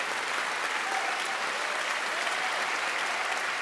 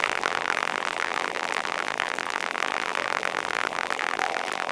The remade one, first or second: second